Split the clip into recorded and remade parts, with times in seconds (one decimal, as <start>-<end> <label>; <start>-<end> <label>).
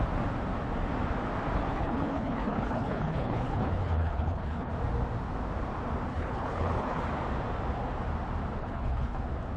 0.0-1.7 recorded; 1.7-4.7 remade; 4.7-6.1 recorded; 6.1-7.0 remade; 7.0-8.6 recorded; 8.6-9.2 remade; 9.2-9.6 recorded